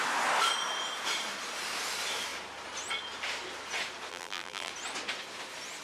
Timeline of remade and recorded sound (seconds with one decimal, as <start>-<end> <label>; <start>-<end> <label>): 0.0-4.1 recorded; 4.1-4.7 remade; 4.7-5.8 recorded